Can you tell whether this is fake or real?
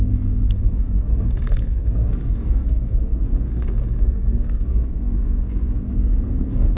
fake